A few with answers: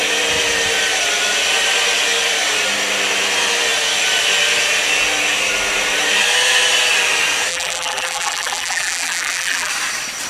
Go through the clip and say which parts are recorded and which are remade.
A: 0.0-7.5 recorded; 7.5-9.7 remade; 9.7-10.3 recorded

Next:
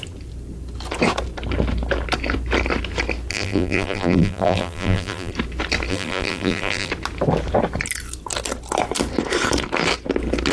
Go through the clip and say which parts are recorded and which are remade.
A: 0.0-3.3 recorded; 3.3-5.3 remade; 5.3-5.9 recorded; 5.9-6.9 remade; 6.9-10.5 recorded